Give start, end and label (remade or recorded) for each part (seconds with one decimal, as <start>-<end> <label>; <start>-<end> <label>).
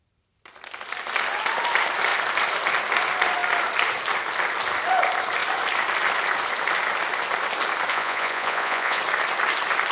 0.0-7.9 recorded; 7.9-9.0 remade; 9.0-9.9 recorded